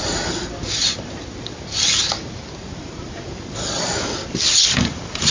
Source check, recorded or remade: recorded